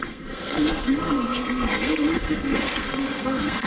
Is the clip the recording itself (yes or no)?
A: no